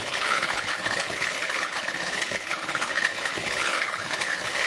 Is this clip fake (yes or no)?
yes